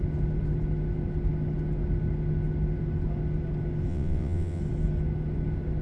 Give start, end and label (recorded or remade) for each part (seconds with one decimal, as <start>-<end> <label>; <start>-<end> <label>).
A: 0.0-3.9 recorded; 3.9-4.6 remade; 4.6-5.8 recorded